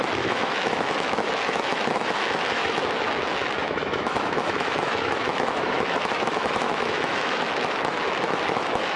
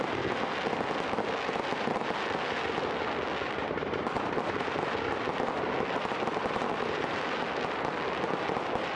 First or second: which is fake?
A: first